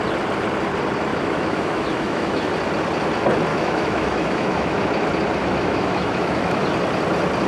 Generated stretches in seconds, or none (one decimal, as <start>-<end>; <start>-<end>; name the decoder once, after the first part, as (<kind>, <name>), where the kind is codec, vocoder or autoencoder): 1.1-2.5 (autoencoder, DAC-VAE); 3.5-4.8; 5.4-6.6